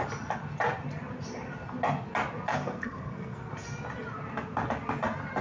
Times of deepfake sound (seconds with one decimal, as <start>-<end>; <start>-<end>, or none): 2.5-3.5